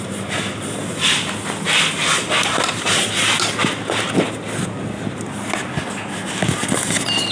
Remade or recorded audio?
recorded